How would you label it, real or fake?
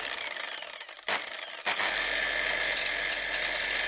real